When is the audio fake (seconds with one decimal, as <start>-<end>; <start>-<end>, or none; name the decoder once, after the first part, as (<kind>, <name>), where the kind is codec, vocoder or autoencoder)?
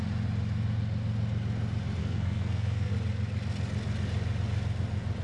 2.0-2.9 (codec, SNAC)